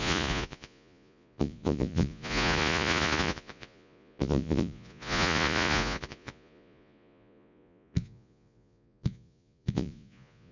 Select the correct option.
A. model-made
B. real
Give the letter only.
A